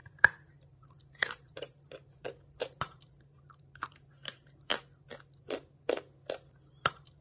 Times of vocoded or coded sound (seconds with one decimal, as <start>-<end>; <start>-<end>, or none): 0.0-4.7; 6.7-7.2